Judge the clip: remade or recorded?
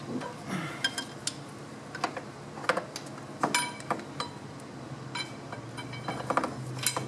recorded